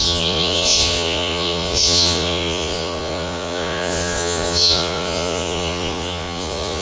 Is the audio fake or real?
fake